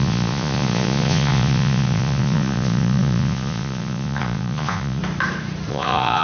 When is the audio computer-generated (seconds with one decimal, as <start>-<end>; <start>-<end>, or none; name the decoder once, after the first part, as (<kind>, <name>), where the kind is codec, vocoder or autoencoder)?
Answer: 0.0-5.0 (vocoder, Vocos); 5.7-6.2